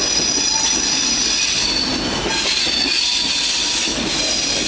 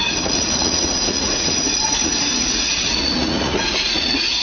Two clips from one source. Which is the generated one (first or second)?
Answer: second